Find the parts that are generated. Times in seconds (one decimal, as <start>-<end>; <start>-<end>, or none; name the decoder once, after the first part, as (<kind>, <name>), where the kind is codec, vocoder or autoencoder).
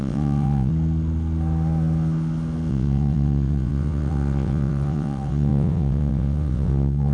0.0-0.7 (vocoder, WaveNeXt); 2.7-7.1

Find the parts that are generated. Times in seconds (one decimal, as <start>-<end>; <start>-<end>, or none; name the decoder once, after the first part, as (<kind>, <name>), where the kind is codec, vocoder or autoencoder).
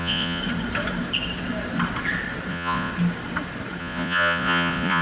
0.0-0.4 (vocoder, Vocos); 2.5-2.9; 3.8-5.0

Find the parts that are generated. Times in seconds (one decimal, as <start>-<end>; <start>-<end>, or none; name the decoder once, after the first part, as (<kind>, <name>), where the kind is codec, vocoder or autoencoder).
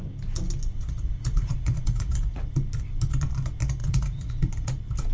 0.7-2.4 (vocoder, Vocos); 3.8-4.5